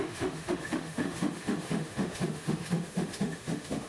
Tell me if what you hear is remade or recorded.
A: remade